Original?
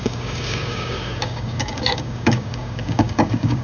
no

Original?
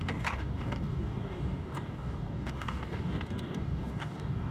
no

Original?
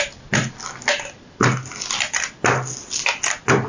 yes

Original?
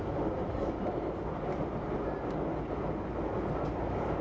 yes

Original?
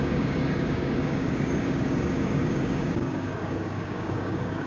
no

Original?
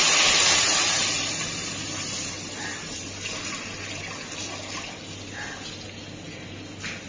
yes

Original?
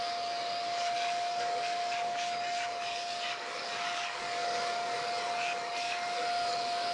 no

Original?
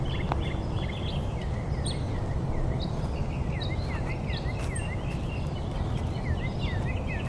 yes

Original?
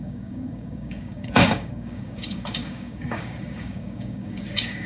no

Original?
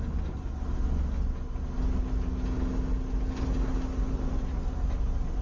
yes